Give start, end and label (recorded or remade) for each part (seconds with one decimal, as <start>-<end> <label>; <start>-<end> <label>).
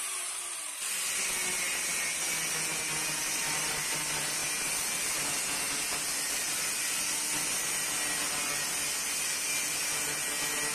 0.0-3.2 recorded; 3.2-3.7 remade; 3.7-10.7 recorded